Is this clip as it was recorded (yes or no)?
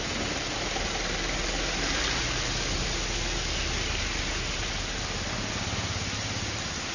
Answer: yes